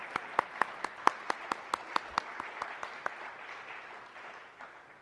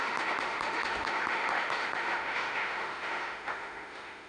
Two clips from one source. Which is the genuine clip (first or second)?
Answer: first